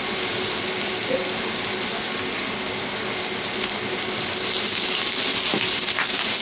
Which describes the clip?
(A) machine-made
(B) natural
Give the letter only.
B